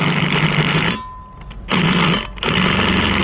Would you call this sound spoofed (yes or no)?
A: no